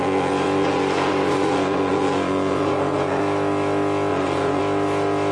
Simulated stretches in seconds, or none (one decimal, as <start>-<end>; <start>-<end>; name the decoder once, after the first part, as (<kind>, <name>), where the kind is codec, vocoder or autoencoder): 0.0-3.2 (vocoder, Vocos); 4.1-4.6